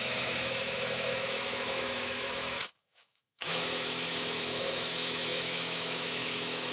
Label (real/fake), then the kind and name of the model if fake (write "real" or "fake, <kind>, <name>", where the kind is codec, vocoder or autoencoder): fake, autoencoder, DAC-VAE